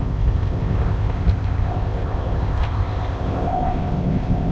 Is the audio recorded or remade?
remade